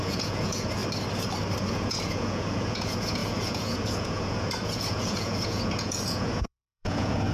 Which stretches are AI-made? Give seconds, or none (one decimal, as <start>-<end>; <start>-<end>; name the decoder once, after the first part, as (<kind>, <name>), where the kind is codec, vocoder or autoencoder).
0.0-0.8 (vocoder, Vocos); 1.6-7.3